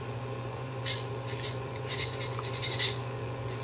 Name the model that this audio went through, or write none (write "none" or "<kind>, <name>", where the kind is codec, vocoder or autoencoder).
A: vocoder, Vocos